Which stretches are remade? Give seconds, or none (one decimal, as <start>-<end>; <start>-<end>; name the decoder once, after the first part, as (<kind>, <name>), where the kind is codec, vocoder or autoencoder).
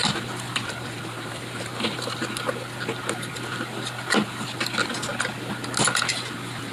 0.5-2.2 (vocoder, BigVGAN v2)